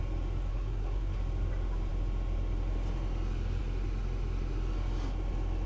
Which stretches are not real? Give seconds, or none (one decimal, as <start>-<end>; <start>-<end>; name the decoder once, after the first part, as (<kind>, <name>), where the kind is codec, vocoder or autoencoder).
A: 0.5-1.2 (codec, SNAC)

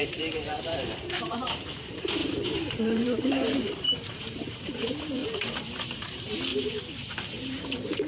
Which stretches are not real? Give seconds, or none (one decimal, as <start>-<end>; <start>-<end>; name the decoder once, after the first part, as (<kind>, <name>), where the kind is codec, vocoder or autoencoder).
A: 0.0-6.5 (vocoder, BigVGAN v2); 7.1-8.1

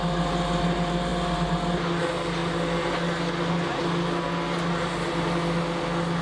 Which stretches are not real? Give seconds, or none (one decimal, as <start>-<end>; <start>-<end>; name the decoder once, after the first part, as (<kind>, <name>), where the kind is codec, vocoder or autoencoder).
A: none

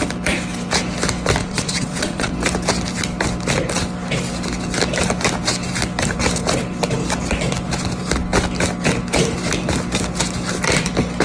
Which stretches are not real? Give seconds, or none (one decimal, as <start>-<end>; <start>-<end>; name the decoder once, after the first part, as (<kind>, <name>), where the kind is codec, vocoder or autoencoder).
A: 1.4-2.3 (vocoder, Vocos)

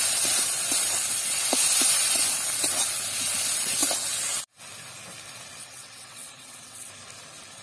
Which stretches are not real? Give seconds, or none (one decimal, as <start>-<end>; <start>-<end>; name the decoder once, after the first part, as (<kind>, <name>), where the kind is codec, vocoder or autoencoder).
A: 5.6-6.9 (vocoder, WaveNeXt)

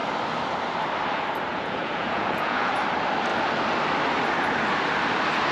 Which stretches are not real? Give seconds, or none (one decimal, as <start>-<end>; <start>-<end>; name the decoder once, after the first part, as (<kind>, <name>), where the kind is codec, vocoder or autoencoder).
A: 1.5-2.8 (vocoder, Vocos)

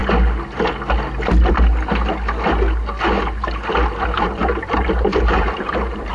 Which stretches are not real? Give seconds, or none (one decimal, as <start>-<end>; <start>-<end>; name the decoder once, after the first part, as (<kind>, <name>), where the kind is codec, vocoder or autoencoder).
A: 4.4-6.1 (vocoder, BigVGAN v2)